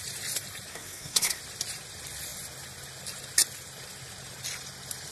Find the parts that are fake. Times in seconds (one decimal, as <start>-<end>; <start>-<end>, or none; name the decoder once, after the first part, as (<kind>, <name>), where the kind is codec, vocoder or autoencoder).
0.7-1.4 (codec, SNAC)